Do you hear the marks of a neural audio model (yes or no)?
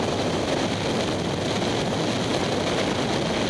no